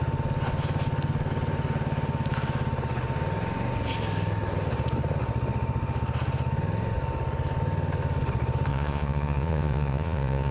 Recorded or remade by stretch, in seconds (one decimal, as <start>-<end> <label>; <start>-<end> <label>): 0.0-8.7 recorded; 8.7-10.5 remade